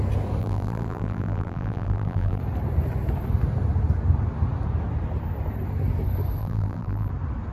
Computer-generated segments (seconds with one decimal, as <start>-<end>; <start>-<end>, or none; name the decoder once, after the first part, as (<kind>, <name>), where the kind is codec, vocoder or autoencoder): 0.4-2.4 (vocoder, BigVGAN v2); 6.4-7.1